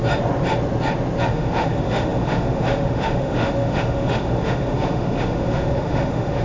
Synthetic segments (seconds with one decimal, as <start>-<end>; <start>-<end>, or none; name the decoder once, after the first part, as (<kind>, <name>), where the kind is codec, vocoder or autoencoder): 1.3-6.4 (autoencoder, DAC-VAE)